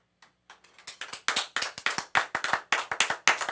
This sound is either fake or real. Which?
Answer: real